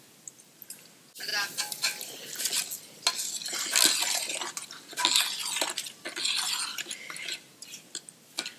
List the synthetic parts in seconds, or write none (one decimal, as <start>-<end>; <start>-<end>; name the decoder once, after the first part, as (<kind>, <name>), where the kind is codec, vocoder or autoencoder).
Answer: none